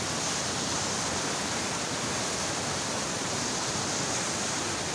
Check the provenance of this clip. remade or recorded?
recorded